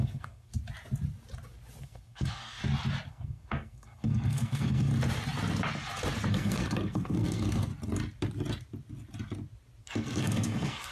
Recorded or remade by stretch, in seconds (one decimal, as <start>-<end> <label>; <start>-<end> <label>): 0.0-0.5 remade; 0.5-1.8 recorded; 1.8-2.6 remade; 2.6-3.1 recorded; 3.1-4.9 remade; 4.9-6.3 recorded; 6.3-7.7 remade; 7.7-9.8 recorded; 9.8-10.9 remade